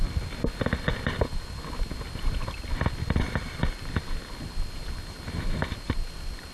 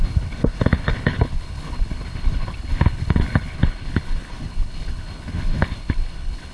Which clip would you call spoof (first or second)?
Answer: second